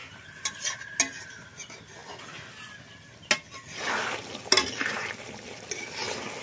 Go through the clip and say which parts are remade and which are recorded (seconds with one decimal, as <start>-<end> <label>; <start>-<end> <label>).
0.0-6.4 recorded